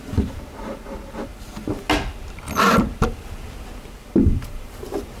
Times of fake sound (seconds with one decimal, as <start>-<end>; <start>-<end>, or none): 0.0-1.3; 4.4-5.2